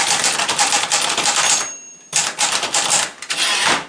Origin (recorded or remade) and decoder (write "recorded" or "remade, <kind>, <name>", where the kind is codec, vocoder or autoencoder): remade, vocoder, BigVGAN v2